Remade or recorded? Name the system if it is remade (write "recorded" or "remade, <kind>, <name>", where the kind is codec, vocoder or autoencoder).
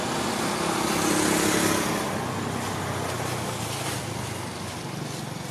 recorded